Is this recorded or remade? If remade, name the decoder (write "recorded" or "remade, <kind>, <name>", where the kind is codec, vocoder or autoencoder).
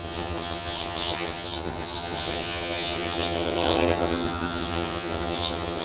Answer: remade, vocoder, HiFi-GAN